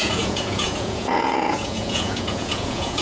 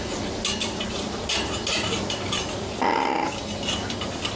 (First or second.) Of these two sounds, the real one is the second